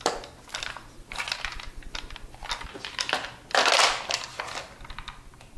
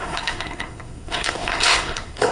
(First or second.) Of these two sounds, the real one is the first